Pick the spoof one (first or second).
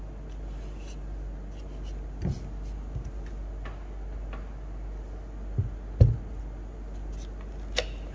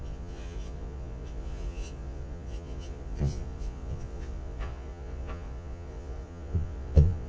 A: second